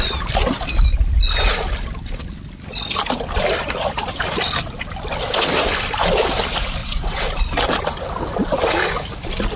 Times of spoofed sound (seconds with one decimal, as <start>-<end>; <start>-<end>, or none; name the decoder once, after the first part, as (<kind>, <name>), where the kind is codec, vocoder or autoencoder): 6.8-7.3 (vocoder, WaveNeXt)